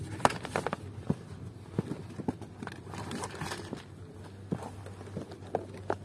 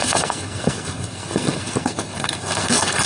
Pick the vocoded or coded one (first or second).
second